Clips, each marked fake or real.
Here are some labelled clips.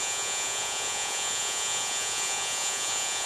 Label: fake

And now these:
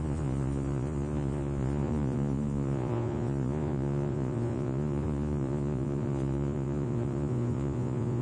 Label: fake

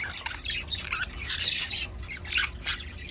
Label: real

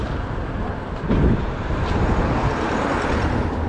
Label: real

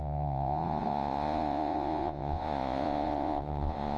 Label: fake